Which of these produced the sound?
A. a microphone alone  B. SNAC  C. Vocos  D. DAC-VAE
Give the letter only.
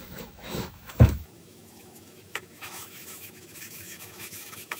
D